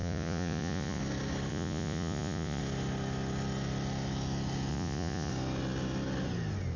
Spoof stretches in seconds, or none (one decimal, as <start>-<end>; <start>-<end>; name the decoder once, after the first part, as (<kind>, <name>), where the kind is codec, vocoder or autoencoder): 0.0-1.0 (vocoder, Vocos); 1.5-2.6; 4.7-5.3